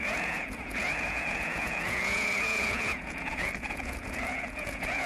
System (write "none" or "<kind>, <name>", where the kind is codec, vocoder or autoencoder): vocoder, Vocos